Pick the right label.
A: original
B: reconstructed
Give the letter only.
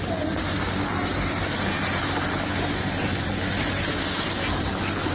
A